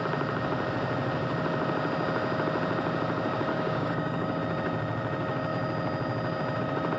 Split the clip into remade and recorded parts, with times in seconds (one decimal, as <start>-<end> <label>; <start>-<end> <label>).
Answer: 0.0-3.5 recorded; 3.5-4.4 remade; 4.4-7.0 recorded